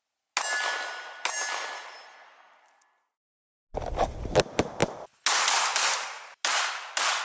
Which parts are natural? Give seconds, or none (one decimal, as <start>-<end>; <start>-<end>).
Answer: 0.0-7.2